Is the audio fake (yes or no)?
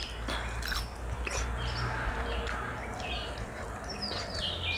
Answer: no